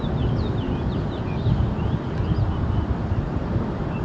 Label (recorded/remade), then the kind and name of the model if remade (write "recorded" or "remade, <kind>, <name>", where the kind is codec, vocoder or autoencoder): recorded